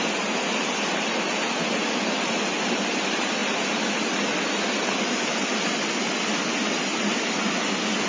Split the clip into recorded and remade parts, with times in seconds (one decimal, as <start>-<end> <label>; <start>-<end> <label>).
0.0-8.1 recorded